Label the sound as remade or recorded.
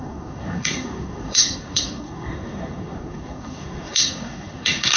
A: remade